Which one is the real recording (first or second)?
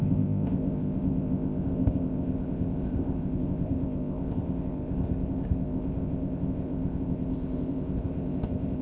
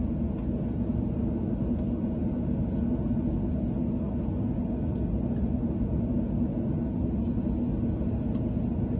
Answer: second